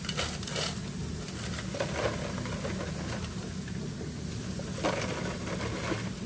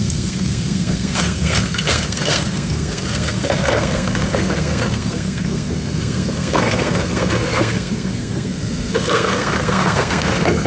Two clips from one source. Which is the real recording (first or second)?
first